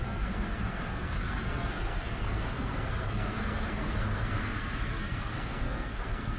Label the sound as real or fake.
fake